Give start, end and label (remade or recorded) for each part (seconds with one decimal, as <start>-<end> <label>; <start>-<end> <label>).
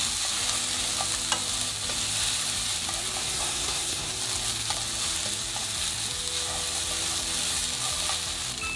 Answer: 0.0-3.2 recorded; 3.2-4.1 remade; 4.1-8.8 recorded